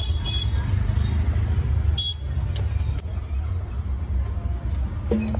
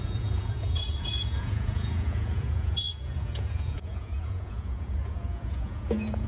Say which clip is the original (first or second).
first